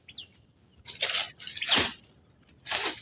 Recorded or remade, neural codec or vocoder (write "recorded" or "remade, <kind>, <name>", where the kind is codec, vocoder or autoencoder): recorded